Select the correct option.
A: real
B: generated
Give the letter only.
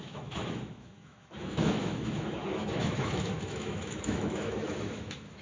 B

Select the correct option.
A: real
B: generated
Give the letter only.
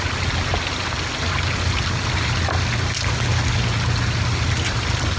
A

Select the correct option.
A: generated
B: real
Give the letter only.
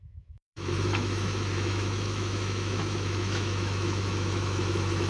A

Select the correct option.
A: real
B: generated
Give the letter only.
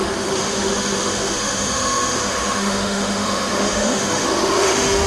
B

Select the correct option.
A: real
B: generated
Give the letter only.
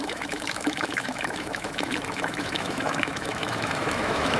B